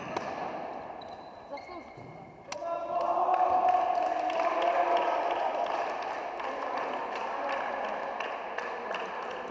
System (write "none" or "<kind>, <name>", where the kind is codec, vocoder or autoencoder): none